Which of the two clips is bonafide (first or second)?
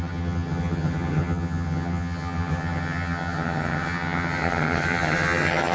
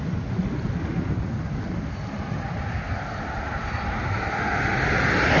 second